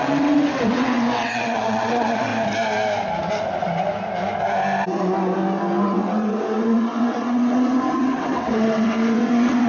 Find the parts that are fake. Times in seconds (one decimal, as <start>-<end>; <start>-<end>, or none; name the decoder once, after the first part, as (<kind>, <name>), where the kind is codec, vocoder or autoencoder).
0.0-2.3 (vocoder, WaveNeXt); 5.8-9.7